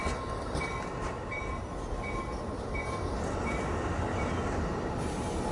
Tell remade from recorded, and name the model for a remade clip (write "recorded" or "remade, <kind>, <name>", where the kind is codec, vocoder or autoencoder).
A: recorded